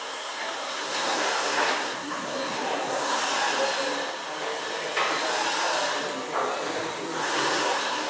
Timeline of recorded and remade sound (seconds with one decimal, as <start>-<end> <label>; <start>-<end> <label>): 0.0-3.2 remade; 3.2-7.2 recorded; 7.2-8.1 remade